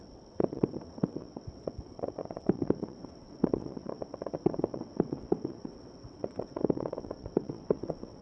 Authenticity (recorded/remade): remade